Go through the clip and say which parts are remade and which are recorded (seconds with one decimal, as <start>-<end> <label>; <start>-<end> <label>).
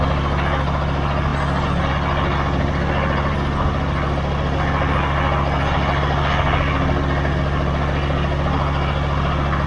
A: 0.0-9.7 recorded